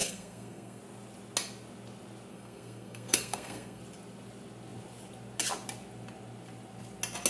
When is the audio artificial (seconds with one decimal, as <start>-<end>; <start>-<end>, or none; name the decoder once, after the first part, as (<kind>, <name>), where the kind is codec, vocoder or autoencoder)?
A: 0.0-0.8 (codec, SNAC); 2.3-3.8